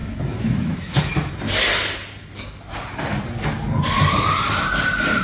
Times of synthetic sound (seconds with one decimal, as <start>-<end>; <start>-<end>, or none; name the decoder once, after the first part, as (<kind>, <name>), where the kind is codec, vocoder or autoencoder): 0.0-1.3 (autoencoder, DAC-VAE)